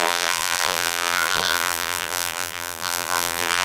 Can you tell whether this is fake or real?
fake